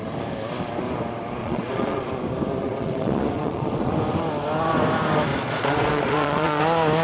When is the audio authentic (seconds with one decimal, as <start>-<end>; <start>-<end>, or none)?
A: 0.0-1.4; 2.1-2.6; 3.9-5.3; 6.6-7.0